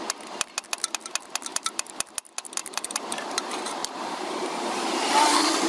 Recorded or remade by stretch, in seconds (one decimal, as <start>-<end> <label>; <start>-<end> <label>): 0.0-1.5 recorded; 1.5-2.1 remade; 2.1-2.6 recorded; 2.6-3.4 remade; 3.4-5.7 recorded